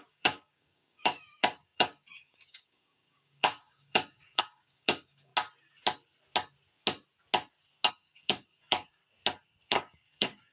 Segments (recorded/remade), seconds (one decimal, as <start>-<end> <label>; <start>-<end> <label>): 0.0-5.3 remade; 5.3-7.9 recorded; 7.9-9.0 remade; 9.0-9.7 recorded; 9.7-10.5 remade